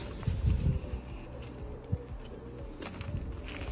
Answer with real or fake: real